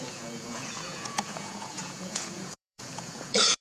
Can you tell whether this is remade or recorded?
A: remade